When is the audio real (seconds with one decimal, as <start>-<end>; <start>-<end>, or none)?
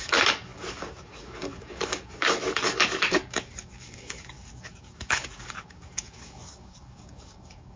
none